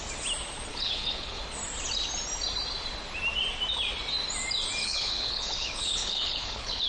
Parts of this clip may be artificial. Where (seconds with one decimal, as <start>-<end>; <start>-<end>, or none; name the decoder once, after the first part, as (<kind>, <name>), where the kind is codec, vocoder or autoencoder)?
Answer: 0.7-1.4 (codec, HILCodec); 4.8-6.9